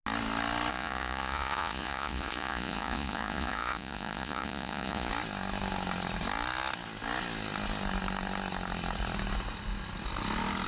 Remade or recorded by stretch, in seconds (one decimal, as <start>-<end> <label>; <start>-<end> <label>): 0.0-0.7 recorded; 0.7-5.1 remade; 5.1-10.7 recorded